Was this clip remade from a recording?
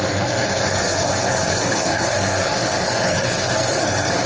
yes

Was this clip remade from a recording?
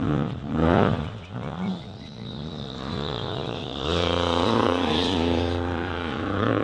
yes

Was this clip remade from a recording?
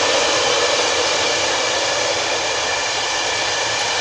no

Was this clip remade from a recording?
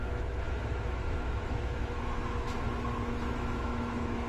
yes